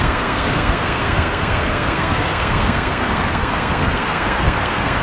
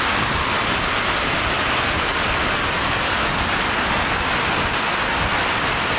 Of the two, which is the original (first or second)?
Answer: second